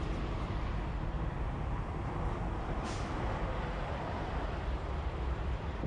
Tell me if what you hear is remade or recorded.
remade